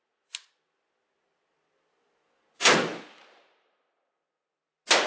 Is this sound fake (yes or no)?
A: no